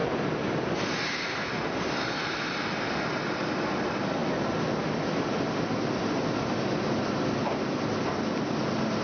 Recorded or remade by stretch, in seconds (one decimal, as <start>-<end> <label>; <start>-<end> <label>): 0.0-9.0 recorded